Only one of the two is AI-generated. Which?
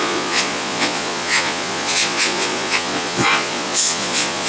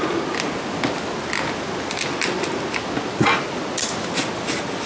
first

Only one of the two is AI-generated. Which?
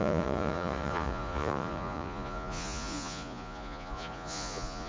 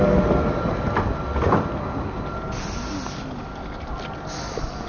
first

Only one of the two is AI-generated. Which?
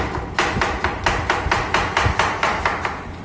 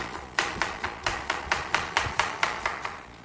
second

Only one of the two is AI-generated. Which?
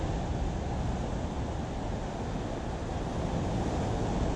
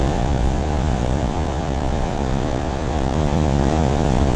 second